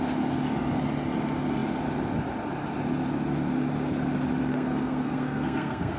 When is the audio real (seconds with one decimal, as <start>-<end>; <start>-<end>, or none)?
0.0-4.5